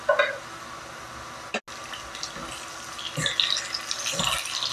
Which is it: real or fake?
real